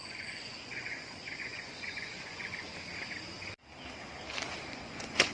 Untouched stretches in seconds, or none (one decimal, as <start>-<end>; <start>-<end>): 2.7-4.7